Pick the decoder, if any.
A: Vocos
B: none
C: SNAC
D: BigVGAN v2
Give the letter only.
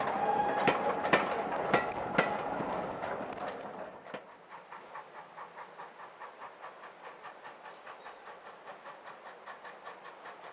B